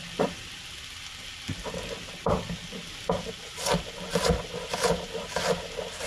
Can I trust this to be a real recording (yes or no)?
yes